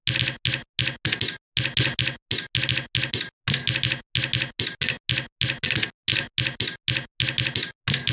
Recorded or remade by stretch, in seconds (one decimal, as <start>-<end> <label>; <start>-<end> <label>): 0.0-8.1 recorded